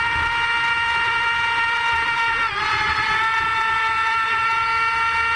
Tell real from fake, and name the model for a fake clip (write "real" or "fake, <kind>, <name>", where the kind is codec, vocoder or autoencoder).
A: real